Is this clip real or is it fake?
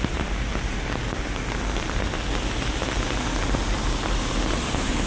real